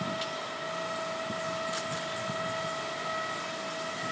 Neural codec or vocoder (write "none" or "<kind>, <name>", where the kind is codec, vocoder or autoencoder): none